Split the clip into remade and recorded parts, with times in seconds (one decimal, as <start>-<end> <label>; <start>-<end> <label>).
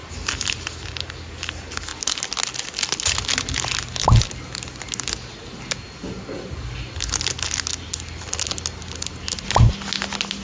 0.0-10.4 recorded